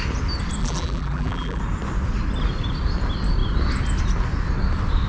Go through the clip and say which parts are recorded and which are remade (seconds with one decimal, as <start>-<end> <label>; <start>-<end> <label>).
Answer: 0.0-0.6 recorded; 0.6-1.6 remade; 1.6-5.1 recorded